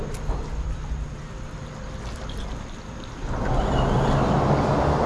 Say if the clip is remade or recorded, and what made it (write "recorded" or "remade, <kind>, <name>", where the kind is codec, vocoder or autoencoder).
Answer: recorded